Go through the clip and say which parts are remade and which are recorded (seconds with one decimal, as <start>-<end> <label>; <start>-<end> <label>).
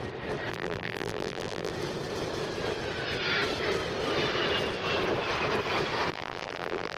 0.0-0.5 recorded; 0.5-1.7 remade; 1.7-6.1 recorded; 6.1-7.0 remade